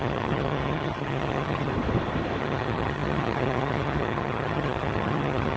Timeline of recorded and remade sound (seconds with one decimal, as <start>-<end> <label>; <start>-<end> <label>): 0.0-1.7 remade; 1.7-2.4 recorded; 2.4-5.6 remade

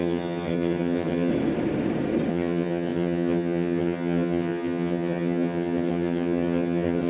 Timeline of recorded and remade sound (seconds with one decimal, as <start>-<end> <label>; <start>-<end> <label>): 0.0-1.3 remade; 1.3-2.3 recorded; 2.3-7.1 remade

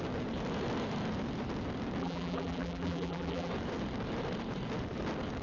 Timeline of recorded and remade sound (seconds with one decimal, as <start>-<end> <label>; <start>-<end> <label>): 0.0-2.0 recorded; 2.0-3.5 remade; 3.5-5.4 recorded

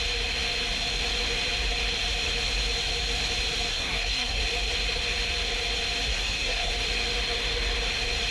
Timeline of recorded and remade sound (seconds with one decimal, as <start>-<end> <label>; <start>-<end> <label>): 0.0-3.7 recorded; 3.7-4.4 remade; 4.4-6.1 recorded; 6.1-6.7 remade; 6.7-8.3 recorded

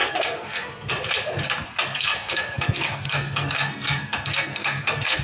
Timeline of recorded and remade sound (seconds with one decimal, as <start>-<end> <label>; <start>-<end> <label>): 0.0-0.9 remade; 0.9-1.9 recorded; 1.9-5.2 remade